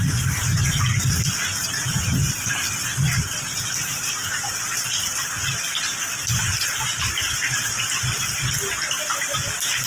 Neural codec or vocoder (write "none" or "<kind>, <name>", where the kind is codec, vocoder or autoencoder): vocoder, BigVGAN v2